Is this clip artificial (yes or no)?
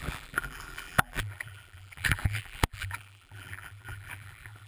yes